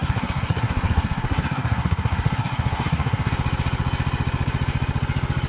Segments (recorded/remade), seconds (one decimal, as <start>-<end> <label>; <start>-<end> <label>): 0.0-3.3 remade; 3.3-5.5 recorded